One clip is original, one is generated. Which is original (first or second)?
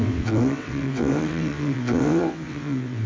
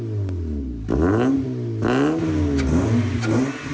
second